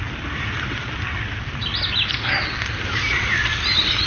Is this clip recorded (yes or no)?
yes